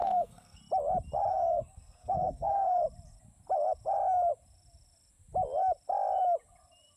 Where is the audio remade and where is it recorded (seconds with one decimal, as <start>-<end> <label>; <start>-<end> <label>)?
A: 0.0-0.6 remade; 0.6-1.3 recorded; 1.3-2.8 remade; 2.8-7.0 recorded